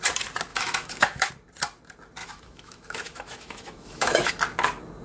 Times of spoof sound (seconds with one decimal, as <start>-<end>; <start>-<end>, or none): 0.5-1.3; 2.2-4.3